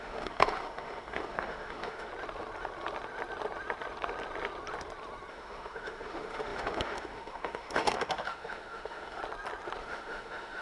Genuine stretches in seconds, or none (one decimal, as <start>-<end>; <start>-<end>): 2.1-5.3; 9.2-9.8